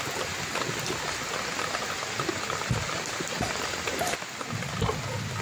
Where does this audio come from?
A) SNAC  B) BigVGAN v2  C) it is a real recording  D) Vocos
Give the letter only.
C